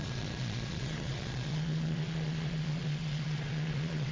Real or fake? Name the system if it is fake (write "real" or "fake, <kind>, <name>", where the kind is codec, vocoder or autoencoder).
fake, vocoder, Vocos